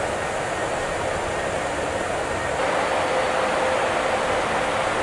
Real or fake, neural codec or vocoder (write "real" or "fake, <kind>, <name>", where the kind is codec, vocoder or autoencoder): real